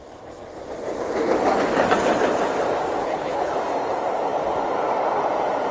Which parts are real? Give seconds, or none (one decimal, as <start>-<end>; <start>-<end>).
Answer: 0.0-3.0; 3.5-5.7

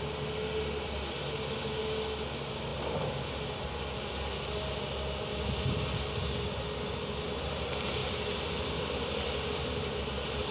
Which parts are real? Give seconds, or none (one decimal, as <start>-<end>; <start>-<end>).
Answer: 0.0-10.5

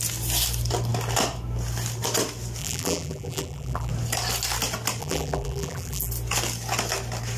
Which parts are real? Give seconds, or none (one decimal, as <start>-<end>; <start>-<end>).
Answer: 0.0-2.6; 3.9-5.0; 6.1-7.4

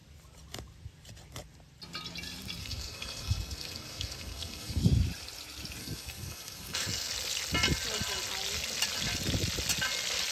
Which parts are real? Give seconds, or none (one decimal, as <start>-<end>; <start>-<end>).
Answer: 0.0-2.6; 4.8-5.8; 7.1-10.3

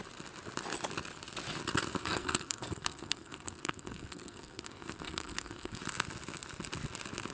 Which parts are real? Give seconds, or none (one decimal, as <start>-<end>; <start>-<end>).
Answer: 0.0-2.0; 5.8-7.3

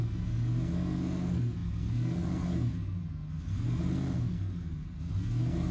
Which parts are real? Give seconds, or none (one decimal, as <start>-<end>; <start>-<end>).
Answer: none